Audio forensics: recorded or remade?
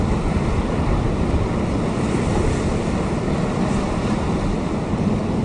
recorded